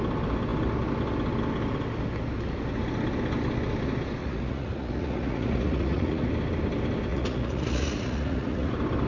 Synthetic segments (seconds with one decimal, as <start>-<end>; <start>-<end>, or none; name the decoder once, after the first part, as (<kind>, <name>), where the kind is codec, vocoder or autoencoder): 4.2-6.3 (vocoder, Vocos); 7.1-8.7